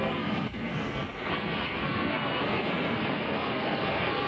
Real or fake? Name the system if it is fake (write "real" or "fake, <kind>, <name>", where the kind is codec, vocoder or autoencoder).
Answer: fake, codec, SNAC